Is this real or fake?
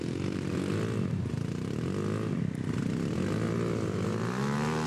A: real